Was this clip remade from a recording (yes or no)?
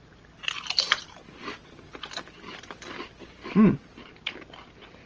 no